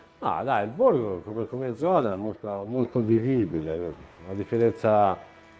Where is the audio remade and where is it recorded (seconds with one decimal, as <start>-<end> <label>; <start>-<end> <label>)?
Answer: 0.0-1.3 recorded; 1.3-4.2 remade; 4.2-5.6 recorded